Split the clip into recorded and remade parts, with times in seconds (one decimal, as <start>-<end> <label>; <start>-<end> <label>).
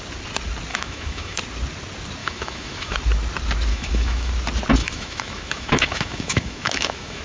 0.0-0.7 recorded; 0.7-1.4 remade; 1.4-2.2 recorded; 2.2-3.0 remade; 3.0-3.7 recorded; 3.7-4.3 remade; 4.3-4.8 recorded; 4.8-7.2 remade